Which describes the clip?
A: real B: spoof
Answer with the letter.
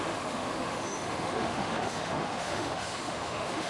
B